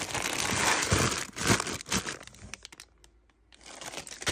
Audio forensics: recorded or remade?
recorded